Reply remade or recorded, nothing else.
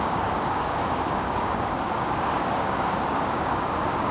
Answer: remade